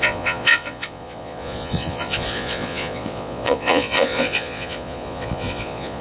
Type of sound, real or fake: fake